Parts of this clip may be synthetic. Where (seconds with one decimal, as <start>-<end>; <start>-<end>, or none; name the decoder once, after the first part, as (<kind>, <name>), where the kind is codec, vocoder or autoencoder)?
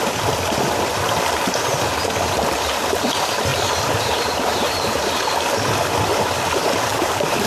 3.5-5.1 (vocoder, BigVGAN v2); 6.9-7.5